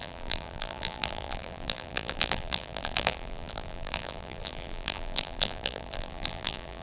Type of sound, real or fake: fake